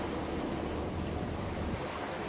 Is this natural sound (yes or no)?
yes